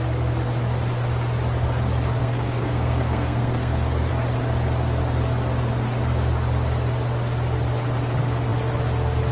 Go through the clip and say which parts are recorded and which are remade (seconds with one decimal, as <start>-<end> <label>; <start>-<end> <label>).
0.0-2.2 recorded; 2.2-4.1 remade; 4.1-9.3 recorded